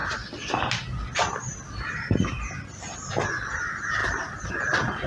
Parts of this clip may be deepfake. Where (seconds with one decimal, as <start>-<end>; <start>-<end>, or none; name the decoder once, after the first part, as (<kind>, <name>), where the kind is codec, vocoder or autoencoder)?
4.0-4.5 (vocoder, BigVGAN v2)